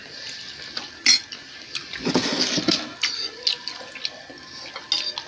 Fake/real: real